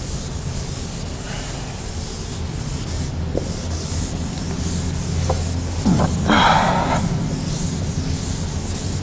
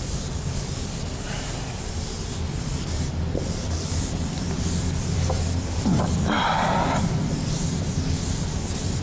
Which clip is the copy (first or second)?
second